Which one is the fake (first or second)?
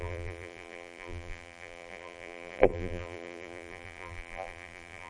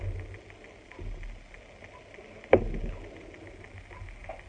first